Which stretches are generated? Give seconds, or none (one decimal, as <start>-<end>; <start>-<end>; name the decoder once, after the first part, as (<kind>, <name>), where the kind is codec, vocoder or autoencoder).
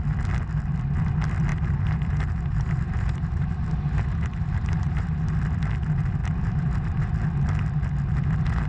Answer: 1.5-5.4 (vocoder, BigVGAN v2); 6.2-7.1